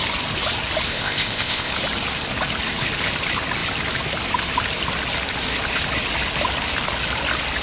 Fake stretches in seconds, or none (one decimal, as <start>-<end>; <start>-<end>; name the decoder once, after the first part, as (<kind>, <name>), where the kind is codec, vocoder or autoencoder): 0.9-1.7 (codec, ZipCodec)

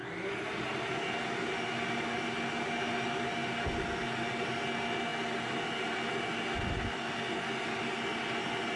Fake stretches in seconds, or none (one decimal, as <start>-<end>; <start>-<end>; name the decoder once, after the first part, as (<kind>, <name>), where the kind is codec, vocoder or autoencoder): none

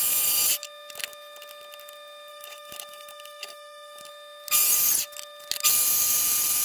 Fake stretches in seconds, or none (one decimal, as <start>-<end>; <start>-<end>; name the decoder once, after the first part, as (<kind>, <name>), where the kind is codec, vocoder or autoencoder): 2.3-4.1 (autoencoder, DAC-VAE)

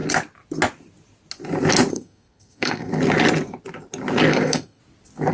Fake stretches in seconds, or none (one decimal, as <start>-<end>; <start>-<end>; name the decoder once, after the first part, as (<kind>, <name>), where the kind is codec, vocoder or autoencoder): 1.9-2.9 (codec, SNAC); 4.3-4.8

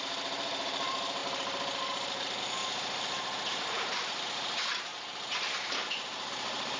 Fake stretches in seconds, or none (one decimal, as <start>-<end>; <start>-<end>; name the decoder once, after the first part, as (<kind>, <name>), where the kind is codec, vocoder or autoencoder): 0.0-4.9 (vocoder, BigVGAN v2); 6.3-6.8